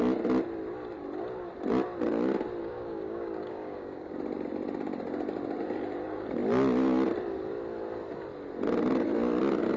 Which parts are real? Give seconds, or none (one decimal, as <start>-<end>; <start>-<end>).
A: 0.0-2.6; 4.1-9.8

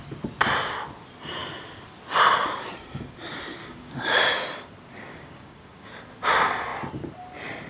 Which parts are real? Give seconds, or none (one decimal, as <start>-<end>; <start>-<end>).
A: 0.0-3.6; 4.2-5.1; 5.9-7.7

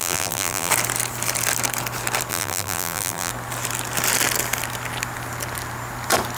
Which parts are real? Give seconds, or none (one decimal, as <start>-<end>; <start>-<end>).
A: 0.7-2.3; 3.3-6.4

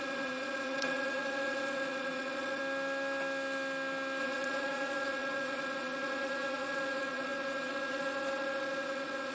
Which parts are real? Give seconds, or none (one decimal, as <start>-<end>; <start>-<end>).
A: 2.6-4.2

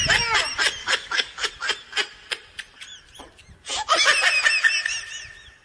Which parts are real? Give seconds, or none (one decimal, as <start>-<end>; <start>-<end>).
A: 0.0-0.8; 1.5-5.6

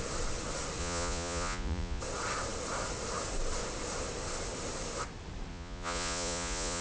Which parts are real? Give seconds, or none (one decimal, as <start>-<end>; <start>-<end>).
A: 0.0-0.8; 2.0-5.5

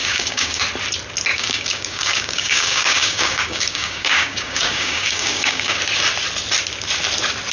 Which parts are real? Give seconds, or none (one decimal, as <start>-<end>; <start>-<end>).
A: 0.6-1.3; 5.8-7.5